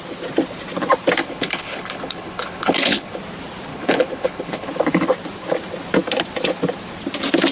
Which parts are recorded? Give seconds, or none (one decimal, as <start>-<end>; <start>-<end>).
0.0-1.2; 3.2-3.7; 4.7-7.5

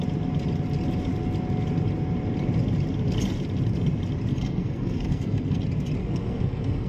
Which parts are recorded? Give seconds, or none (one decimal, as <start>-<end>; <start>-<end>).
0.0-4.3; 5.6-6.0